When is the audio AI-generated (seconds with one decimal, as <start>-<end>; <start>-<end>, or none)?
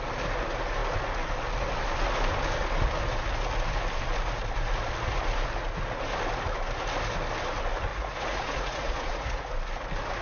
7.9-9.5